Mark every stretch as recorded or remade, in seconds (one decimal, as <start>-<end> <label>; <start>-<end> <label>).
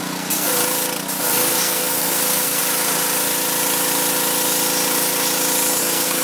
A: 0.0-0.5 remade; 0.5-1.2 recorded; 1.2-2.6 remade; 2.6-5.8 recorded; 5.8-6.2 remade